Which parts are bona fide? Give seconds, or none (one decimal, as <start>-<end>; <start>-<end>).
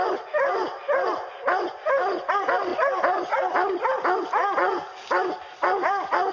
0.0-6.3